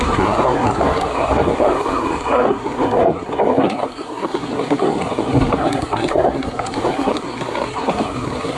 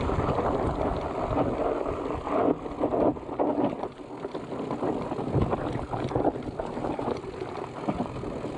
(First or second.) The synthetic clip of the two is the first